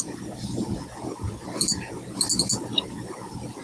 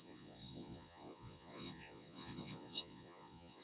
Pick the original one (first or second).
first